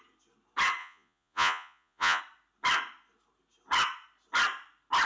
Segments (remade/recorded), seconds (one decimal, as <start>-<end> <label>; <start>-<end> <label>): 0.0-0.8 recorded; 0.8-2.2 remade; 2.2-5.1 recorded